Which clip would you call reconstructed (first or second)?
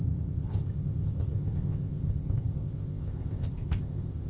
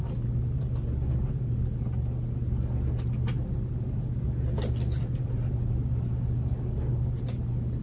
first